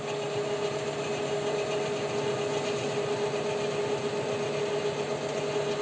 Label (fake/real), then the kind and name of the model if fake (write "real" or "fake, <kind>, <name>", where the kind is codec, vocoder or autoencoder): real